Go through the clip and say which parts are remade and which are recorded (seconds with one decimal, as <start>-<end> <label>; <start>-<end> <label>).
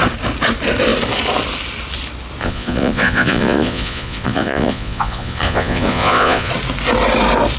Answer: 0.0-2.4 recorded; 2.4-6.5 remade; 6.5-7.6 recorded